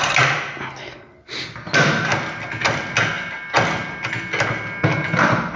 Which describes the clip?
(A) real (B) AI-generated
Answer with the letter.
A